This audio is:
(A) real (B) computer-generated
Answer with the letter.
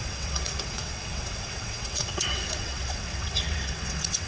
B